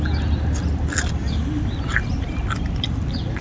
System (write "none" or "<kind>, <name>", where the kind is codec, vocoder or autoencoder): none